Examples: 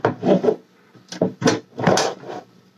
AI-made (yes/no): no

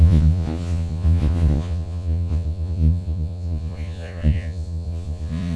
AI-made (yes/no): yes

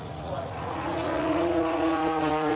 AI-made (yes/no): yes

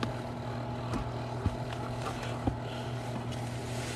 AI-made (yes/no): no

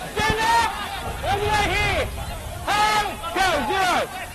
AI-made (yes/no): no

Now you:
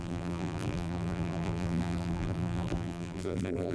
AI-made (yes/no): yes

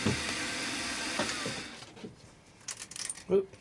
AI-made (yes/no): yes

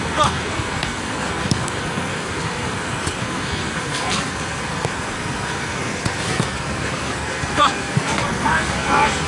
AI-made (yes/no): yes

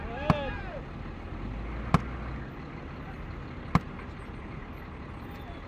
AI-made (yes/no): no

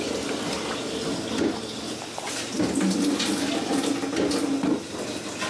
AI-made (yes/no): no